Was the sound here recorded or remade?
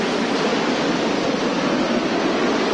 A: recorded